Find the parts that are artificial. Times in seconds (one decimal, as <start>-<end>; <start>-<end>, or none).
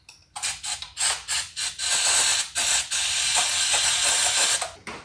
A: none